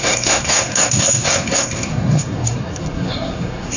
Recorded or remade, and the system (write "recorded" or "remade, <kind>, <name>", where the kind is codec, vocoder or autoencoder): remade, codec, SNAC